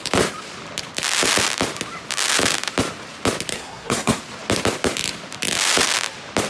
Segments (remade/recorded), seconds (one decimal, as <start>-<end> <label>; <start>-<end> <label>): 0.0-3.5 recorded; 3.5-4.2 remade; 4.2-6.5 recorded